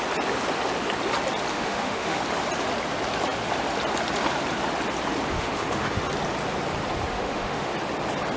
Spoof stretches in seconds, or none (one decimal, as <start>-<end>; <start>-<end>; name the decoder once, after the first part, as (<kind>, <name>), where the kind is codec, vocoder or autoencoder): 1.5-2.2 (autoencoder, DAC-VAE); 5.3-6.0; 7.1-7.7